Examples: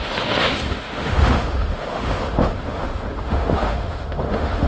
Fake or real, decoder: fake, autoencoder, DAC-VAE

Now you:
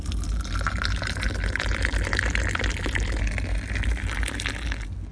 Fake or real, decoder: real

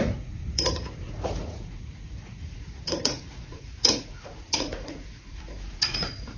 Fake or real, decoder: fake, vocoder, Vocos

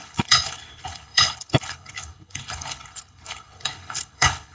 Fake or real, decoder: fake, codec, HILCodec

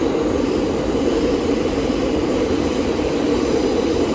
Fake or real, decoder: fake, vocoder, BigVGAN v2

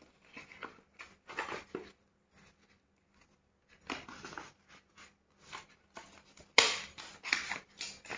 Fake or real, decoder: real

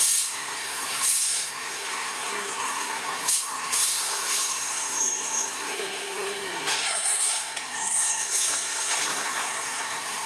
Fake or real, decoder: fake, codec, SNAC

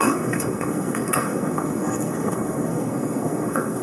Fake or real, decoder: fake, codec, SNAC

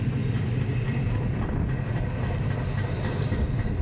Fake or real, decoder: real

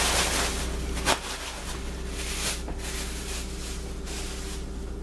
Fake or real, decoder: real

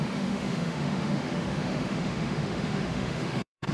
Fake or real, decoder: fake, autoencoder, DAC-VAE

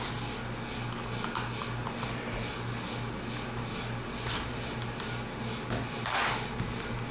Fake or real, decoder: real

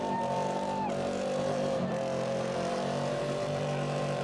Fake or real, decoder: fake, vocoder, BigVGAN v2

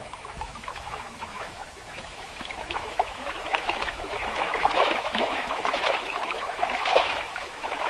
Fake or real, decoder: fake, autoencoder, DAC-VAE